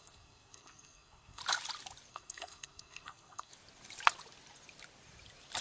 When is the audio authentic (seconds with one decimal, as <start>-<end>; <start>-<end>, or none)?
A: 1.4-2.1; 3.5-5.6